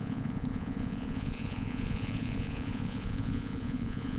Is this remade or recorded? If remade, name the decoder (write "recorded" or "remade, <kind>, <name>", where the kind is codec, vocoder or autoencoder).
remade, vocoder, Vocos